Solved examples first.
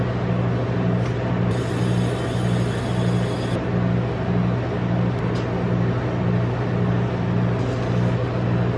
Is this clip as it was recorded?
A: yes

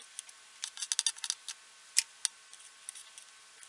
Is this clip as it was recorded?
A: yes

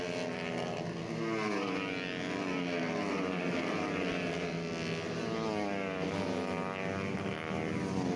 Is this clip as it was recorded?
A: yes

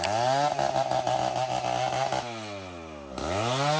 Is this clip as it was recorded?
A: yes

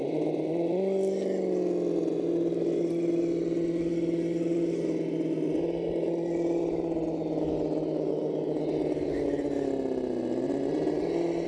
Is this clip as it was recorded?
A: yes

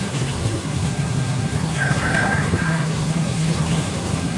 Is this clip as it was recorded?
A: no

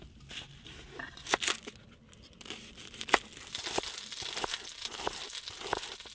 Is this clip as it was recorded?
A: yes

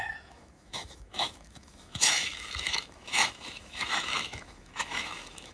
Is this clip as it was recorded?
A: no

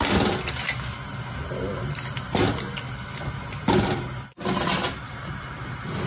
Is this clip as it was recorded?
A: yes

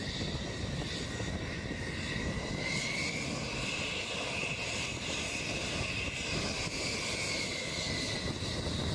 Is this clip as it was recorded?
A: yes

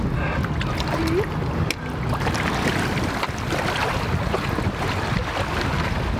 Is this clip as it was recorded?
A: yes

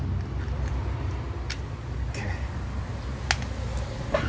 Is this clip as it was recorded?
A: yes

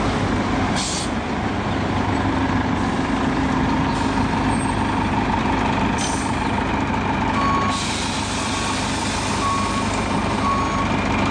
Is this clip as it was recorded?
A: yes